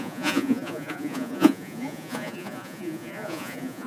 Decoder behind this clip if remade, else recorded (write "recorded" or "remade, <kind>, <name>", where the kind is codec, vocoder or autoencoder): remade, vocoder, Vocos